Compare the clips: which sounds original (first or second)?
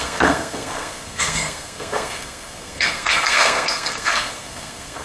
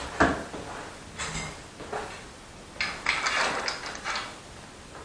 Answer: second